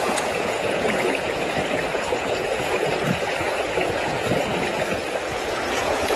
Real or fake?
fake